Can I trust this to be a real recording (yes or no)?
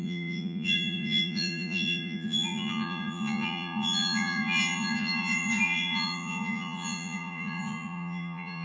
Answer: no